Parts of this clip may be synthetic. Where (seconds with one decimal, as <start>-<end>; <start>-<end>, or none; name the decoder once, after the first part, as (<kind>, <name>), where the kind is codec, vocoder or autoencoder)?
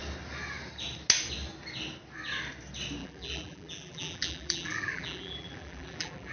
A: 3.0-6.3 (vocoder, BigVGAN v2)